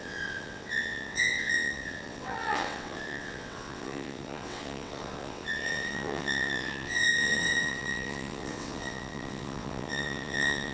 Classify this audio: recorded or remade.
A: remade